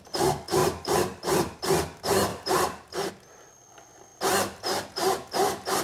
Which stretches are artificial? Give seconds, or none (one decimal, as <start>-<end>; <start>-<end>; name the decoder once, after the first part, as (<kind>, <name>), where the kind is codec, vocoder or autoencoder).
0.6-1.6 (vocoder, BigVGAN v2); 2.3-3.1